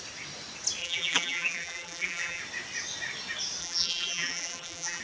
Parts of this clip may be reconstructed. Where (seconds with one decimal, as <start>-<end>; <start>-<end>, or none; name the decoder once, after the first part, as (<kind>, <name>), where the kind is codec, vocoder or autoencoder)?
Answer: 0.8-2.4 (vocoder, BigVGAN v2); 3.6-5.0